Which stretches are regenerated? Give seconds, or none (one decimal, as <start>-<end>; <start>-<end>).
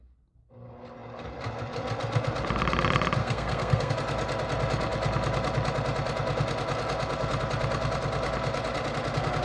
3.2-3.9